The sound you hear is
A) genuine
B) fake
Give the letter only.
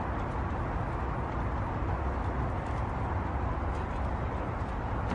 A